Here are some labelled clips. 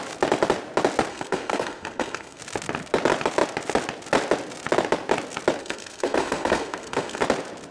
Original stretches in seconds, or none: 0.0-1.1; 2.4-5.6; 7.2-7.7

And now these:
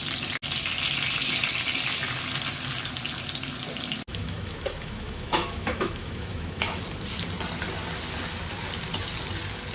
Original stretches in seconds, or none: 0.0-4.1; 6.8-9.7

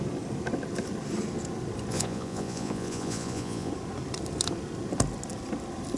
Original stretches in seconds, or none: 0.0-1.9; 3.7-6.0

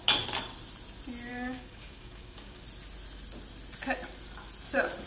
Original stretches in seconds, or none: 0.0-1.3; 2.6-5.1

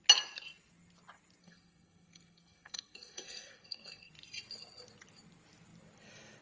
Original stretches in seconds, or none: 0.0-1.4; 4.1-6.4

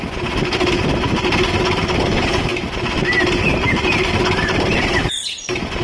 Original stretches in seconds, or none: 0.0-2.5